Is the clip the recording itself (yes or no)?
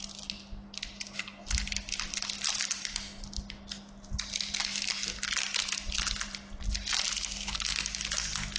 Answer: yes